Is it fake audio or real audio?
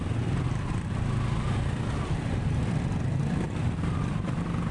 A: real